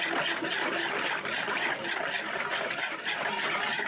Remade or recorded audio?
recorded